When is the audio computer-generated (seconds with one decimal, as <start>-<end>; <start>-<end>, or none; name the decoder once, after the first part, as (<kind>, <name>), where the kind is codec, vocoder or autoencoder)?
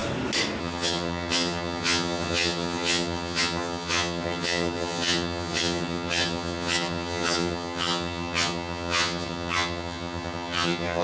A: 0.6-11.0 (vocoder, HiFi-GAN)